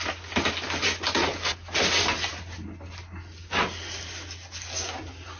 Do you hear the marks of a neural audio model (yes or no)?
no